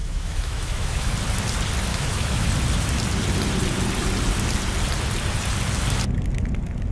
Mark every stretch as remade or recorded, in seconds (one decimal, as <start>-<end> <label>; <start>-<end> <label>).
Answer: 0.0-1.1 remade; 1.1-1.9 recorded; 1.9-2.5 remade; 2.5-6.9 recorded